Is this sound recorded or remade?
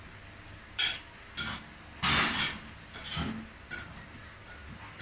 recorded